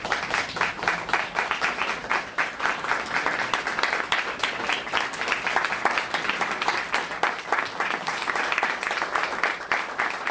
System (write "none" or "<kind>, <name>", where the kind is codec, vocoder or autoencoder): none